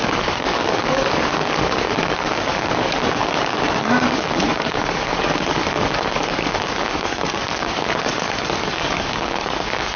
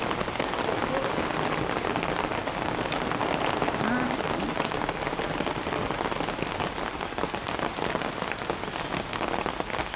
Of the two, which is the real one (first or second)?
second